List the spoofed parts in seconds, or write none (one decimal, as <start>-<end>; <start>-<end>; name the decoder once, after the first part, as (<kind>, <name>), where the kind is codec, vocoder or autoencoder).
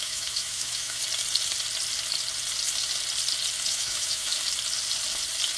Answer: 0.0-1.0 (autoencoder, DAC-VAE); 3.7-4.3